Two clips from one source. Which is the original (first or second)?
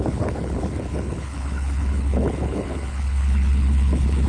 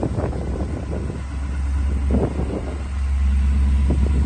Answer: second